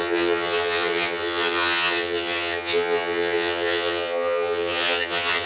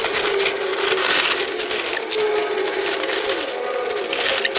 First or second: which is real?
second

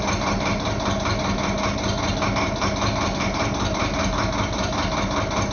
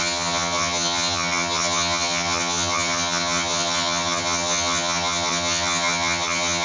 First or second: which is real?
first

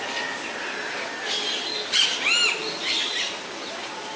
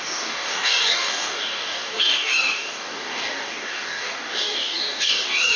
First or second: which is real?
first